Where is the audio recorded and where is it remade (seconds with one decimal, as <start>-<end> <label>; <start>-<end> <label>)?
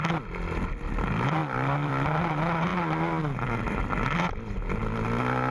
0.0-1.4 recorded; 1.4-1.9 remade; 1.9-5.5 recorded